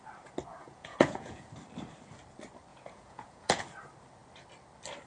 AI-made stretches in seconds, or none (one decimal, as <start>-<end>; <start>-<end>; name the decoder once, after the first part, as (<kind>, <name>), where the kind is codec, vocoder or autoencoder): 0.5-1.5 (vocoder, Vocos); 2.7-3.6